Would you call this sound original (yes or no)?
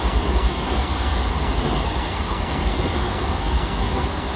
no